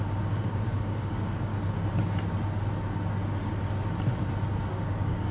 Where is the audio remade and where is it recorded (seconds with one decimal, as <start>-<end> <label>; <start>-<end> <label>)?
0.0-1.5 remade; 1.5-4.7 recorded; 4.7-5.3 remade

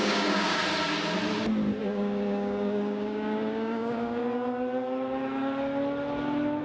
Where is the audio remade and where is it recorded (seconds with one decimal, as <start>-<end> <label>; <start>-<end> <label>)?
0.0-0.6 remade; 0.6-1.8 recorded; 1.8-4.2 remade; 4.2-6.6 recorded

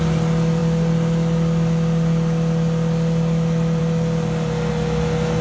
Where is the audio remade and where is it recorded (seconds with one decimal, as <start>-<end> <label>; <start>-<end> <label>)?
0.0-5.4 recorded